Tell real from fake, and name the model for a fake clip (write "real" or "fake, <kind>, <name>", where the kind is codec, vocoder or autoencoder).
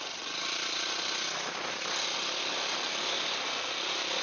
real